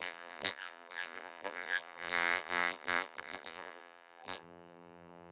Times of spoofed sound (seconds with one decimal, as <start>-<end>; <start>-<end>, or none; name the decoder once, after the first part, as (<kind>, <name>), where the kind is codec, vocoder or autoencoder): 0.0-5.3 (vocoder, BigVGAN v2)